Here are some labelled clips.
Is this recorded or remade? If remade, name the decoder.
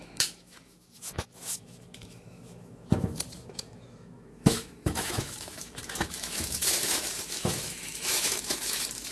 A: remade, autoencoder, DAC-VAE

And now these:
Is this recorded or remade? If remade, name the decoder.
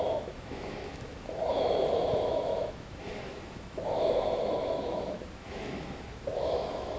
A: remade, autoencoder, DAC-VAE